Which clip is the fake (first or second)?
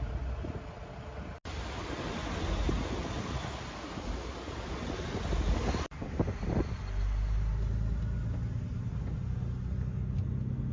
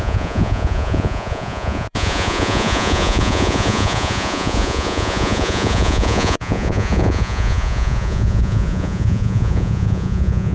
second